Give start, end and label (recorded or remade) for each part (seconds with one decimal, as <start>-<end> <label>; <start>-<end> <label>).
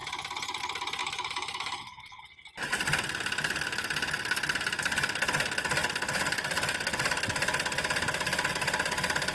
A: 0.0-1.0 recorded; 1.0-2.2 remade; 2.2-9.3 recorded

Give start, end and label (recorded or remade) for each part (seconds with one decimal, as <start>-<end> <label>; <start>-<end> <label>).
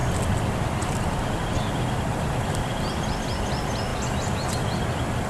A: 0.0-5.3 recorded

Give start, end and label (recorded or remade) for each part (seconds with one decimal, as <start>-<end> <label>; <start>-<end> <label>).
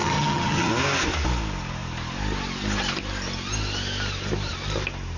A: 0.0-0.7 remade; 0.7-5.2 recorded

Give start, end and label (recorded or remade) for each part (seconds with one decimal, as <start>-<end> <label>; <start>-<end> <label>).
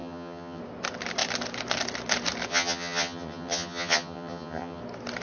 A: 0.0-0.6 remade; 0.6-2.5 recorded; 2.5-4.8 remade; 4.8-5.2 recorded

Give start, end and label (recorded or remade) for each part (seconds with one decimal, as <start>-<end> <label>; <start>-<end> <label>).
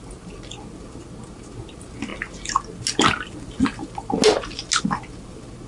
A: 0.0-5.7 recorded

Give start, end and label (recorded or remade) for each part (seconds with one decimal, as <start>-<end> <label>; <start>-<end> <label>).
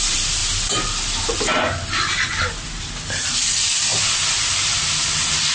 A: 0.0-3.9 remade; 3.9-4.5 recorded; 4.5-5.5 remade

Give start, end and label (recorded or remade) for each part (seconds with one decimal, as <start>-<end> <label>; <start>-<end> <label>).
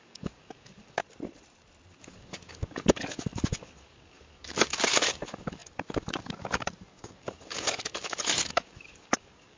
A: 0.0-1.0 remade; 1.0-2.0 recorded; 2.0-9.6 remade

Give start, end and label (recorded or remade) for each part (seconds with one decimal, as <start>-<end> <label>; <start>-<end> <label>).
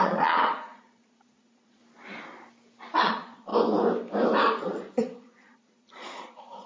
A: 0.0-1.8 remade; 1.8-3.0 recorded; 3.0-3.5 remade; 3.5-4.6 recorded; 4.6-6.7 remade